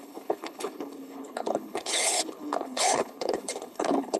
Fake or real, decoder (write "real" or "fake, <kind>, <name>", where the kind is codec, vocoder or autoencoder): fake, codec, HILCodec